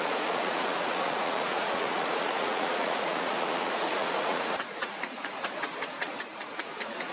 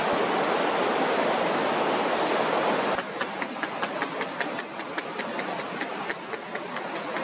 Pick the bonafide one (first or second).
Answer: second